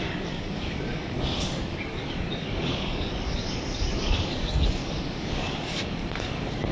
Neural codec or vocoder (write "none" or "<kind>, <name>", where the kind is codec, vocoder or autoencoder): codec, DAC